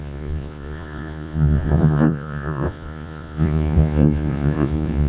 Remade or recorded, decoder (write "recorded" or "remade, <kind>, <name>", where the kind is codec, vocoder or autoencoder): remade, vocoder, Vocos